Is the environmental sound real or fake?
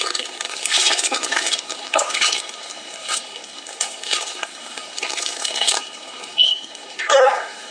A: fake